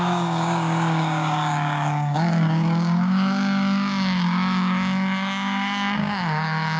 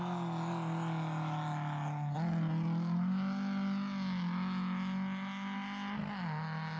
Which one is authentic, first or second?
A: second